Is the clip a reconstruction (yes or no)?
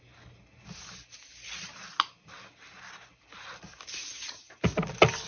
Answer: no